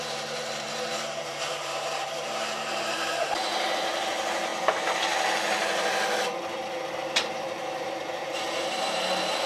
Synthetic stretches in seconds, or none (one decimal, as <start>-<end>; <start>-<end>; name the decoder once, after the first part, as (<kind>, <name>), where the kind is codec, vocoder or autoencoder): 0.0-4.5 (vocoder, BigVGAN v2); 6.9-9.5